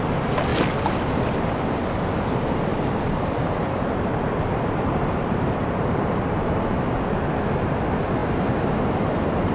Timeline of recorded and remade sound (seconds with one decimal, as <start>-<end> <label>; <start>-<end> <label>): 0.0-2.7 recorded; 2.7-6.5 remade; 6.5-9.5 recorded